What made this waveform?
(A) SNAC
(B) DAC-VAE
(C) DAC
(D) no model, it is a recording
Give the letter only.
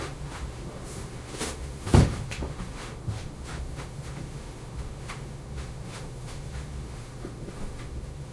B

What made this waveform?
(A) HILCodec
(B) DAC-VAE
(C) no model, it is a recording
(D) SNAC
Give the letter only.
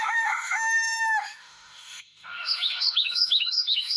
B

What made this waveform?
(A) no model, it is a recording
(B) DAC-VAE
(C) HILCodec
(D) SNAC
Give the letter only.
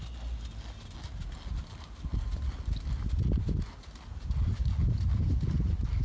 A